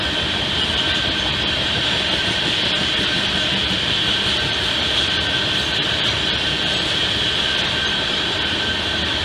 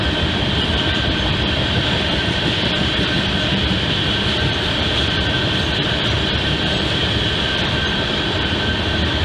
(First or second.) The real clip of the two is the first